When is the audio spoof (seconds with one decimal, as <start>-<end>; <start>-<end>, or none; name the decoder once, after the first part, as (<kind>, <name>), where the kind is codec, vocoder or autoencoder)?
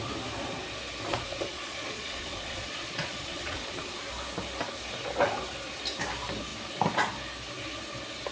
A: 1.1-4.0 (vocoder, Vocos)